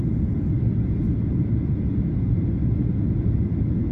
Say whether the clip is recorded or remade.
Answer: recorded